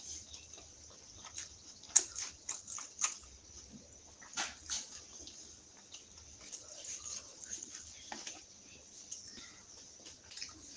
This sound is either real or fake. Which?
real